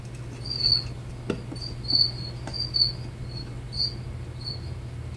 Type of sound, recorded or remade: recorded